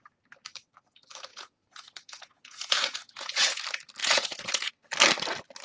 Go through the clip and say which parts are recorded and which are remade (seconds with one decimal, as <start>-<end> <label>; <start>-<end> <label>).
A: 0.0-1.3 recorded; 1.3-3.6 remade; 3.6-4.0 recorded; 4.0-4.7 remade; 4.7-5.6 recorded